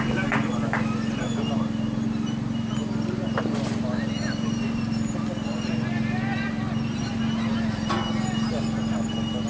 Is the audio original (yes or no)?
yes